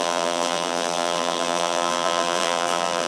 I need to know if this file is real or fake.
fake